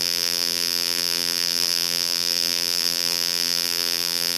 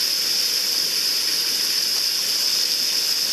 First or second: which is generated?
first